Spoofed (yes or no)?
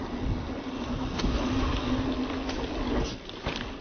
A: no